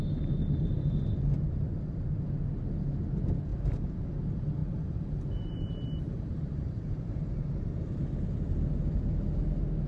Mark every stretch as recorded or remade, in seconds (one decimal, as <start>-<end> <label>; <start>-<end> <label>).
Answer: 0.0-3.5 recorded; 3.5-4.0 remade; 4.0-4.6 recorded; 4.6-8.0 remade; 8.0-9.9 recorded